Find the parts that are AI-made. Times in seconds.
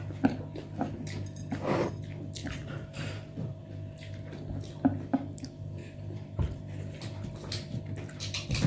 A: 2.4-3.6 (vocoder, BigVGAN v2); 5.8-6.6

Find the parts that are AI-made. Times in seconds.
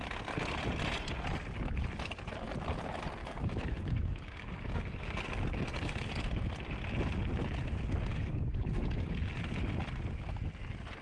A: 3.2-5.2 (codec, DAC); 5.7-6.2; 8.1-9.3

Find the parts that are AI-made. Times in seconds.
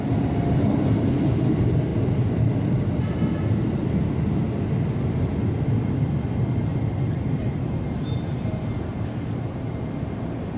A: none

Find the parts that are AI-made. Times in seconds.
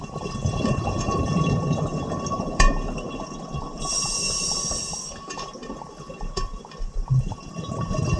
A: 0.0-8.2 (vocoder, BigVGAN v2)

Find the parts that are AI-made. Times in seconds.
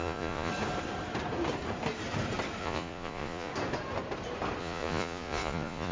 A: 0.0-0.5 (vocoder, Vocos); 2.6-3.5; 4.6-5.9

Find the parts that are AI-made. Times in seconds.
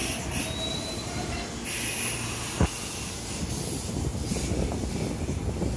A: none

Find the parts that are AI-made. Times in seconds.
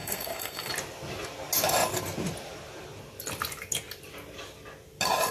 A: 0.0-0.7 (codec, SNAC)